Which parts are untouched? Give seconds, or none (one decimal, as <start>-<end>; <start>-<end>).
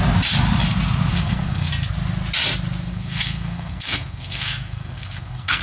0.0-1.1; 1.7-2.9